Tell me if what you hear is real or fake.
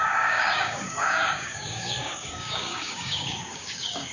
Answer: fake